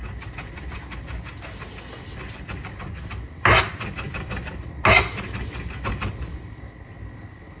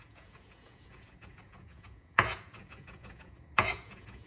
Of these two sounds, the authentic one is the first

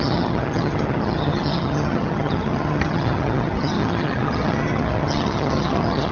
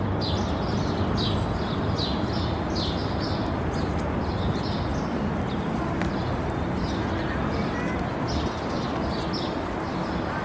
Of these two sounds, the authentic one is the second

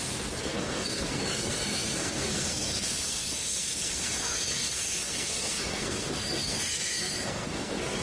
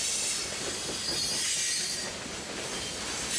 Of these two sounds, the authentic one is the second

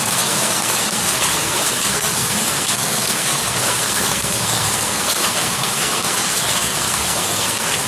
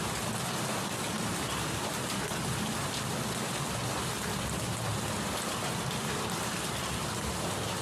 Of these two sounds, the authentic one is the second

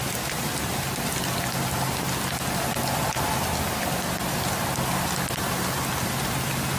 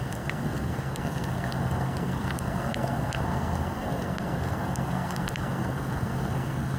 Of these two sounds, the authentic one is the first